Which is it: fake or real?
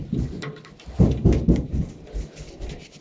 real